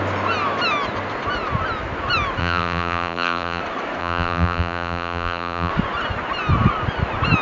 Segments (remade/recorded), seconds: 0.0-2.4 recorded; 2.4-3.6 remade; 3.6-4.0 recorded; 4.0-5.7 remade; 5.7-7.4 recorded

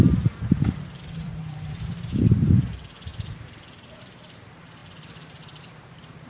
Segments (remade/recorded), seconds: 0.0-3.1 remade; 3.1-3.7 recorded; 3.7-6.3 remade